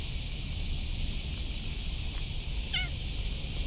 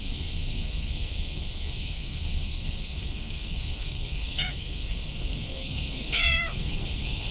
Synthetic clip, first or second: second